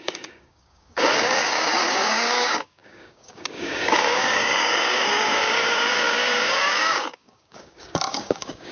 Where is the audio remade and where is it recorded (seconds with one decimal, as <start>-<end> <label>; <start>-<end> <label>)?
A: 0.0-8.7 remade